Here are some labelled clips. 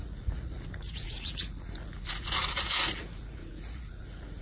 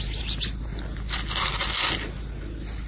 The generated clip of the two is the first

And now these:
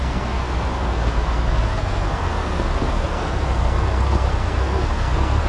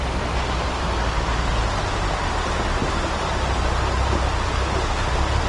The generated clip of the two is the first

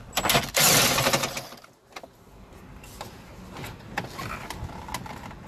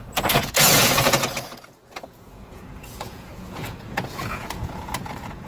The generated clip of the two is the second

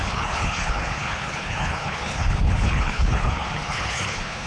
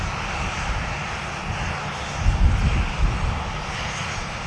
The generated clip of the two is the first